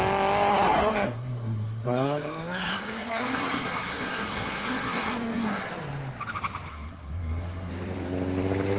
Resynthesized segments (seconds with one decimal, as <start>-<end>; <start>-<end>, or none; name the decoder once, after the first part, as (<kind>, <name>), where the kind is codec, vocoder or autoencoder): 0.5-5.7 (codec, SNAC); 6.7-7.7